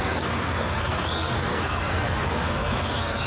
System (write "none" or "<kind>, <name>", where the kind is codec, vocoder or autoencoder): codec, SNAC